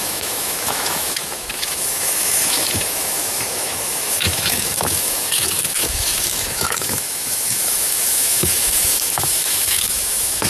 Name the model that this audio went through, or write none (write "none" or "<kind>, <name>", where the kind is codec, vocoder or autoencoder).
autoencoder, DAC-VAE